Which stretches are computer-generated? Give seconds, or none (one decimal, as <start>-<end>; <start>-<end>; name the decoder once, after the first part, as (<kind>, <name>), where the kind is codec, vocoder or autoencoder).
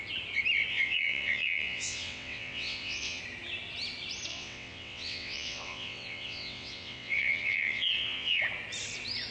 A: 0.7-3.2 (vocoder, WaveNeXt); 4.3-8.4